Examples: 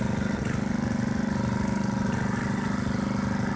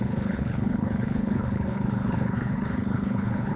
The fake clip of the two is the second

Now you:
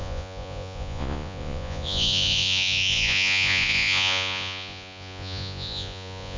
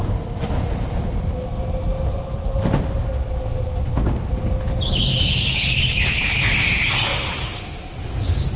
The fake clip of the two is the first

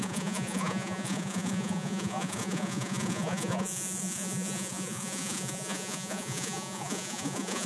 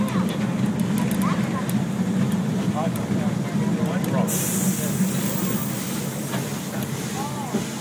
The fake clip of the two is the first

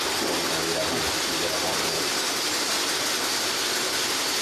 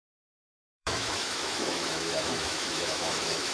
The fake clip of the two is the second